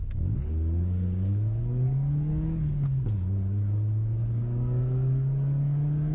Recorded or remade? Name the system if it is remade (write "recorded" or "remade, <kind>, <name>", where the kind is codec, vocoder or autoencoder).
remade, codec, DAC